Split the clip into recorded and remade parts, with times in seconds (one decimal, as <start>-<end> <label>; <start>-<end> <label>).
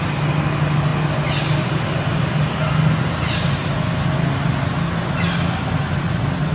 0.0-6.5 recorded